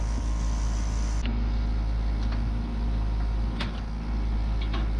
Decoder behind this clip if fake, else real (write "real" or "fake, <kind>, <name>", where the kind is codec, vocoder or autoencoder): real